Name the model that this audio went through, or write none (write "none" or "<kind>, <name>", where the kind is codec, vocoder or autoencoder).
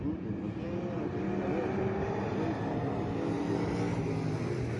none